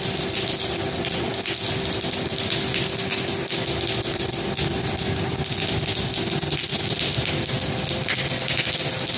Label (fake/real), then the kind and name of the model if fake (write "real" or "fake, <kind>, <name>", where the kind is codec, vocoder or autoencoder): real